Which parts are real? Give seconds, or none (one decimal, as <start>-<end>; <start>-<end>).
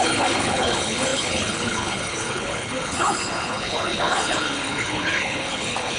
none